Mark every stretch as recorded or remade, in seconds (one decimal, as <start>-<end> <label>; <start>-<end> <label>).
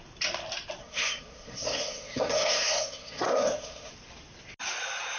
0.0-0.8 recorded; 0.8-3.9 remade; 3.9-5.2 recorded